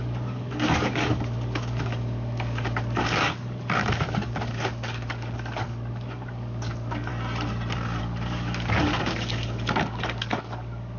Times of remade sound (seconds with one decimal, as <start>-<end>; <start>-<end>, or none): 0.0-7.1; 8.0-11.0

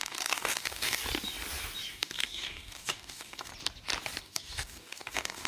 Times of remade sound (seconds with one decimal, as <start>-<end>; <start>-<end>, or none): 0.0-1.0; 1.9-3.5; 4.2-5.5

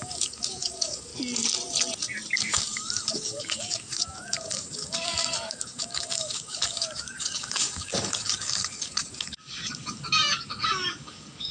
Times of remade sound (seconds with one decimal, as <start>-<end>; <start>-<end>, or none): 0.0-1.1; 2.4-11.5

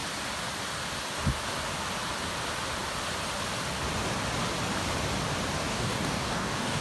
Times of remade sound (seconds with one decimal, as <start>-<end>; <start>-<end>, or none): 5.7-6.8

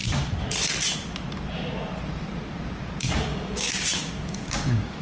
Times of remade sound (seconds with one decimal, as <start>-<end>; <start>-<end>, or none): 3.0-5.0

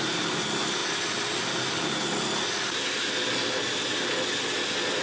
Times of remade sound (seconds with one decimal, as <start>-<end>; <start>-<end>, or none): none